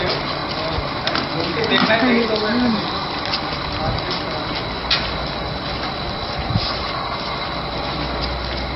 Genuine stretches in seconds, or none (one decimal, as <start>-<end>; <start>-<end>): 0.0-8.8